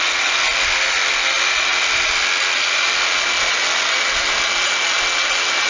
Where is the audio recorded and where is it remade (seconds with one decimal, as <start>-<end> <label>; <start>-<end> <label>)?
0.0-5.7 recorded